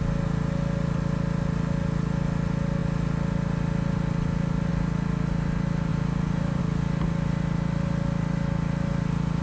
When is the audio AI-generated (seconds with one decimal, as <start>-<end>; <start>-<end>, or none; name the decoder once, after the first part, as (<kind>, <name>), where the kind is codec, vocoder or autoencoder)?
5.9-6.6 (vocoder, BigVGAN v2)